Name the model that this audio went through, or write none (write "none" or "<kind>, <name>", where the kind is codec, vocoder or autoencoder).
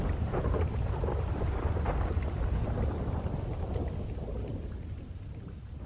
none